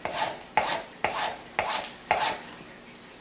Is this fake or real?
real